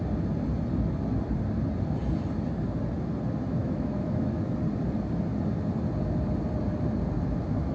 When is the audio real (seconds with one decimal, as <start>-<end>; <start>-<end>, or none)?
0.0-3.6; 4.5-7.7